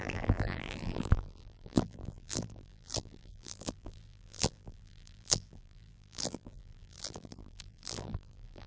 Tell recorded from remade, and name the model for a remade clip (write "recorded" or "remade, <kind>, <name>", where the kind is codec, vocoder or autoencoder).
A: remade, vocoder, BigVGAN v2